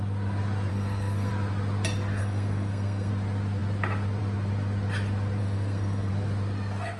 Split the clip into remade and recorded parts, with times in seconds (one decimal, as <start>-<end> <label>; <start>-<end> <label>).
0.0-0.7 recorded; 0.7-1.3 remade; 1.3-2.2 recorded; 2.2-3.1 remade; 3.1-5.4 recorded; 5.4-6.1 remade; 6.1-7.0 recorded